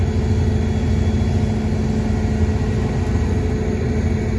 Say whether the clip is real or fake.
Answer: real